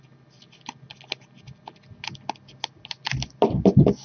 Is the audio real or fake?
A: real